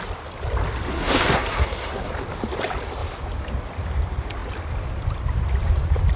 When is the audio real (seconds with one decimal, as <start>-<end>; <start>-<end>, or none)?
0.0-0.9; 2.1-6.2